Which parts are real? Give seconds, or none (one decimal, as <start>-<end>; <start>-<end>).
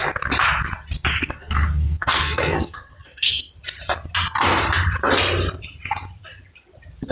0.0-1.2; 3.5-7.1